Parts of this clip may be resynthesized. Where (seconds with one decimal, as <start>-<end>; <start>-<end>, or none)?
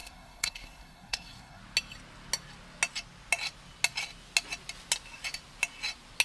0.0-1.6